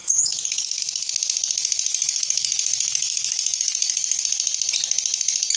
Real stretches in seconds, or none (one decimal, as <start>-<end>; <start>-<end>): 0.8-1.9; 4.2-5.6